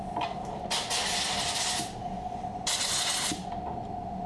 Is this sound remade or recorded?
recorded